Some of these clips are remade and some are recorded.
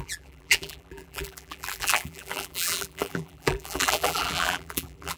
remade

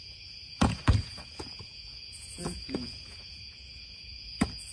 remade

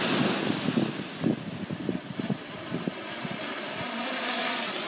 recorded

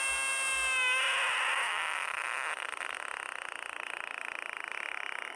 recorded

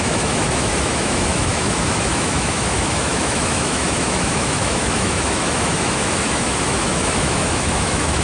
remade